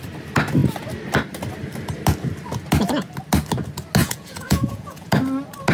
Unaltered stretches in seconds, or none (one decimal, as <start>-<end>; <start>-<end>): 0.0-4.0; 5.1-5.7